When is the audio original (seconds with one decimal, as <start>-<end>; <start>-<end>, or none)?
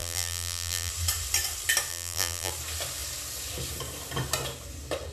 0.9-1.9; 2.5-5.1